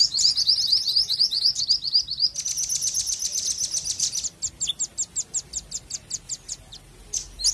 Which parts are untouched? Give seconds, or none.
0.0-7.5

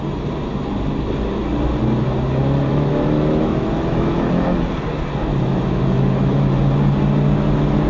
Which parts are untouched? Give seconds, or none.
0.0-2.7; 4.7-5.3; 6.6-7.9

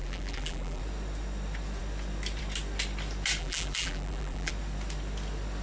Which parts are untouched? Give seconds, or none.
0.8-3.4; 4.5-5.6